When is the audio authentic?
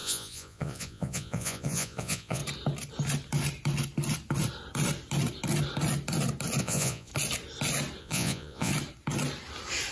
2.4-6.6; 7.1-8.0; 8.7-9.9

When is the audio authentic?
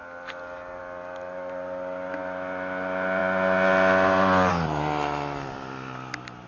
0.0-6.5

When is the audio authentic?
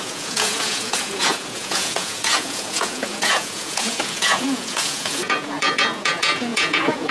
none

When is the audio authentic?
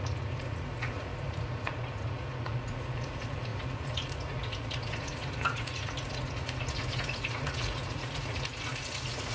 none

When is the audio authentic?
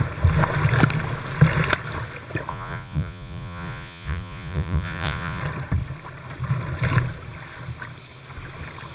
0.0-2.5; 5.4-8.9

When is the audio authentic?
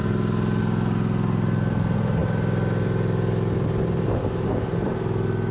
0.0-5.5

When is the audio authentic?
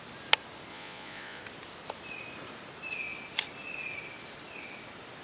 0.0-0.7; 1.4-5.2